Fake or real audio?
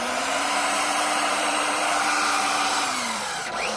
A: fake